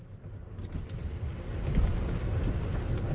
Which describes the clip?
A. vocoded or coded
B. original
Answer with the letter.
B